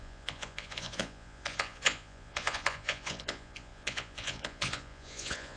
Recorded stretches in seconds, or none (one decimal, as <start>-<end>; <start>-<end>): none